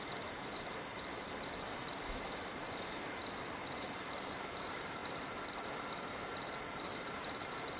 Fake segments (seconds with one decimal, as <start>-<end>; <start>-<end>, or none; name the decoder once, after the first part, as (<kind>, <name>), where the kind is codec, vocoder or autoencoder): 0.0-3.2 (vocoder, BigVGAN v2); 3.8-5.0; 6.8-7.8